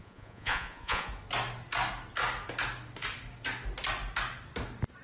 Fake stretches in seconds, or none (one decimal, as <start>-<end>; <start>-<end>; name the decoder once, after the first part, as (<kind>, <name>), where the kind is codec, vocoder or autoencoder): 0.0-1.1 (vocoder, Vocos)